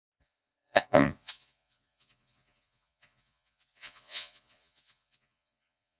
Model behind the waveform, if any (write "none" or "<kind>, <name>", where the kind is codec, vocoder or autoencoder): vocoder, Vocos